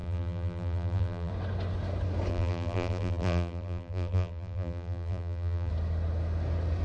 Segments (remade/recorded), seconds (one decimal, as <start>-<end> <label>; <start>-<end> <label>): 0.0-1.3 remade; 1.3-2.3 recorded; 2.3-5.7 remade; 5.7-6.8 recorded